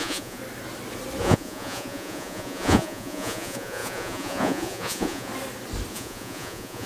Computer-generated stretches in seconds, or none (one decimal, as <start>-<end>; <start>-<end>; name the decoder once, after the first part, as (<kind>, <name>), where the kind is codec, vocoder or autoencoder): 0.0-0.4 (vocoder, Vocos); 1.2-5.3; 5.9-6.9